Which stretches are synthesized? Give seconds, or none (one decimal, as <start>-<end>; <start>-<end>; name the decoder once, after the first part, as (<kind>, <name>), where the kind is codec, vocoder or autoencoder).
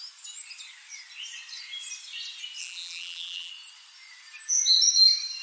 2.6-3.5 (vocoder, BigVGAN v2)